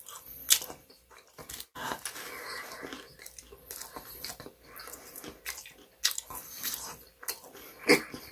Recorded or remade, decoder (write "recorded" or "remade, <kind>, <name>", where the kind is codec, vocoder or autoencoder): recorded